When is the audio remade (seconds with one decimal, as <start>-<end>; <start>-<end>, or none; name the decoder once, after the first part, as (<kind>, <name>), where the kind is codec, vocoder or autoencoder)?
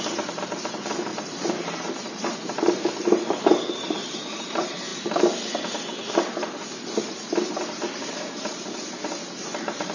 0.0-9.9 (vocoder, BigVGAN v2)